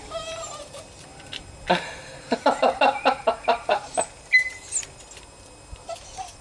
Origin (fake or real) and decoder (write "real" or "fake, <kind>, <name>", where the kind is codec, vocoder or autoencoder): real